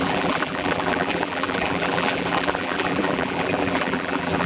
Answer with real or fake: fake